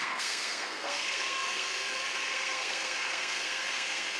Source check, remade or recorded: remade